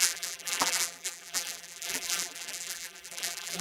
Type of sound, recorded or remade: remade